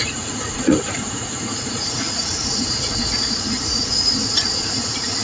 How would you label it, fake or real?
fake